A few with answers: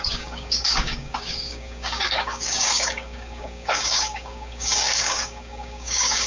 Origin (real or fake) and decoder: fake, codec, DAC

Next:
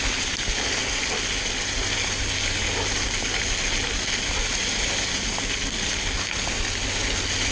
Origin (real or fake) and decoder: real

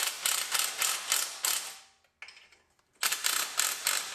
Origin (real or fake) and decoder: real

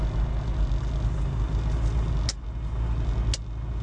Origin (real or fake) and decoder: real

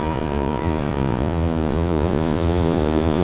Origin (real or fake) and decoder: fake, vocoder, Vocos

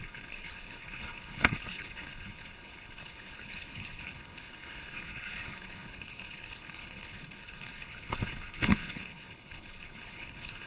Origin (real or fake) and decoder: fake, codec, HILCodec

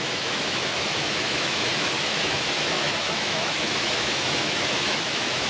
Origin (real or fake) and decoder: fake, autoencoder, DAC-VAE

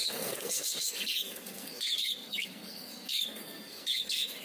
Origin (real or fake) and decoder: fake, codec, SNAC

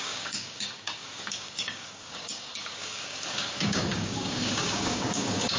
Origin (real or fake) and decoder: fake, codec, DAC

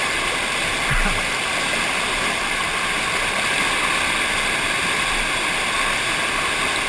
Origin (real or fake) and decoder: real